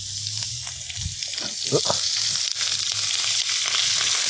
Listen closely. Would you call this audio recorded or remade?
recorded